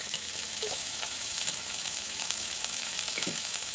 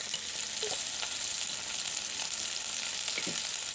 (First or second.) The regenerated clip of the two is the first